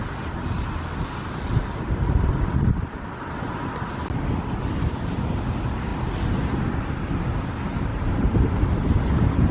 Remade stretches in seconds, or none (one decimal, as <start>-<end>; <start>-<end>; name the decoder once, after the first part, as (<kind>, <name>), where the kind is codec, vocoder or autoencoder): 7.9-9.5 (vocoder, BigVGAN v2)